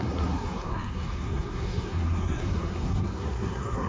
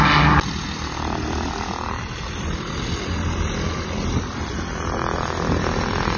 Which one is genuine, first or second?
second